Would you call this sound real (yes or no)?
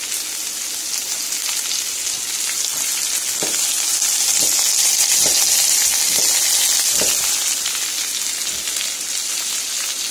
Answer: yes